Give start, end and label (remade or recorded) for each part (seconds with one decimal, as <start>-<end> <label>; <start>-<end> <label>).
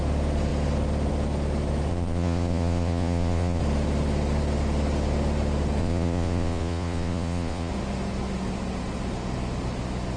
0.0-1.9 recorded; 1.9-3.6 remade; 3.6-5.8 recorded; 5.8-7.7 remade; 7.7-10.2 recorded